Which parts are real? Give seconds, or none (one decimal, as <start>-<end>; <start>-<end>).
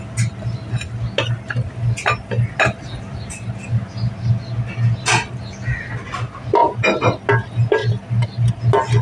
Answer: 0.0-6.6; 7.3-7.8; 8.6-9.0